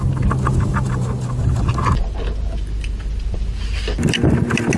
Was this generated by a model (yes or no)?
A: no